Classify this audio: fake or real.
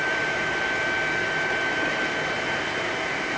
real